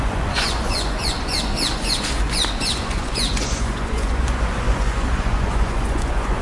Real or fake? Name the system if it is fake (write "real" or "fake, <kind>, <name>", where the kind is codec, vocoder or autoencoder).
fake, vocoder, Vocos